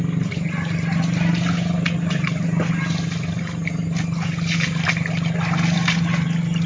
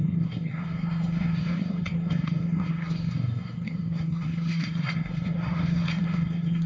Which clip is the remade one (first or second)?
second